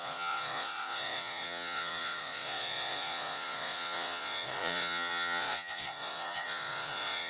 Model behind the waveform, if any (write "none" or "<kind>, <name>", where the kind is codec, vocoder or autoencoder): vocoder, Vocos